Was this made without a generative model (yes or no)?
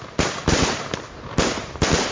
yes